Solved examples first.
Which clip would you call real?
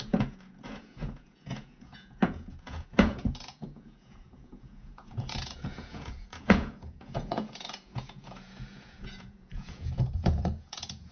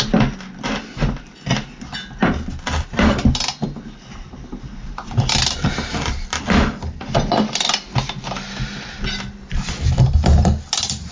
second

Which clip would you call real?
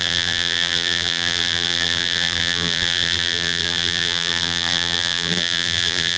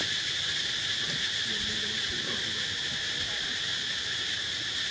second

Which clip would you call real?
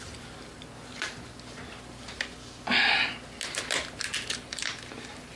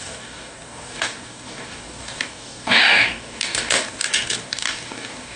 first